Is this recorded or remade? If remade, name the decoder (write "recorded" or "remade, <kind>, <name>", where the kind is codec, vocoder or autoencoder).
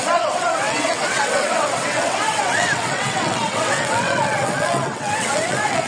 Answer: remade, vocoder, WaveNeXt